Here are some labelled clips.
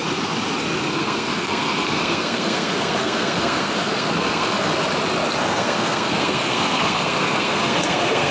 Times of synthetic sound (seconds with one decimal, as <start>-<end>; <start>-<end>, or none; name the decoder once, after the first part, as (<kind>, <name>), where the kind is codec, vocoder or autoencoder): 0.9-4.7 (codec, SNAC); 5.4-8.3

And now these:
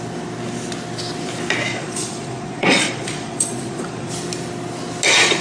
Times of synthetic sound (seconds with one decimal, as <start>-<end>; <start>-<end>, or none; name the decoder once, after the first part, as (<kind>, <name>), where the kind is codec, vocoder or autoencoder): 1.7-4.1 (vocoder, Vocos)

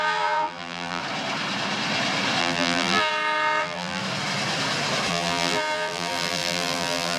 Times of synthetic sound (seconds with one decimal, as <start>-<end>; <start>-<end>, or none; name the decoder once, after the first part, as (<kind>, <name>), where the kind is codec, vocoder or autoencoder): 0.0-1.0 (vocoder, BigVGAN v2); 2.4-3.1; 3.6-4.0; 5.1-7.2

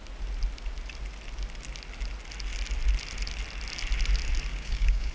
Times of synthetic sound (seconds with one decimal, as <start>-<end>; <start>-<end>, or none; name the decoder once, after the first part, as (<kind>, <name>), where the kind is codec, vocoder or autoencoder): 4.5-5.1 (codec, DAC)